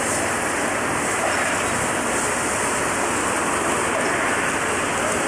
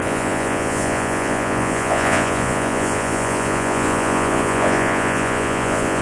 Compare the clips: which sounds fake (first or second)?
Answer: second